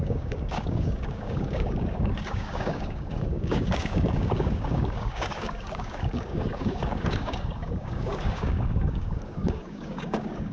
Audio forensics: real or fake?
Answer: fake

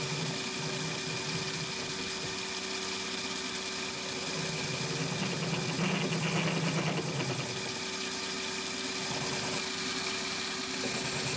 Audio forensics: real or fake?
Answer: real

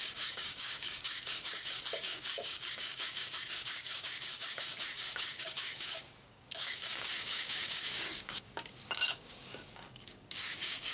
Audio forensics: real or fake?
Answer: fake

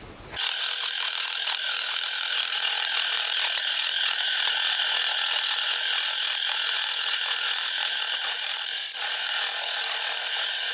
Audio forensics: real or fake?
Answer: fake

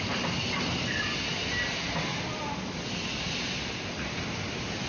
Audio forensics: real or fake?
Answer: real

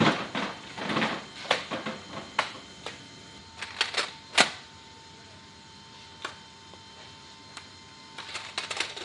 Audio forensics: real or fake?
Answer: real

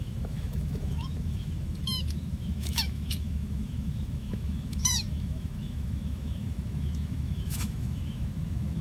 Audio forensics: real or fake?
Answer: fake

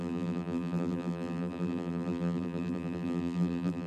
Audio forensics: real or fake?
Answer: fake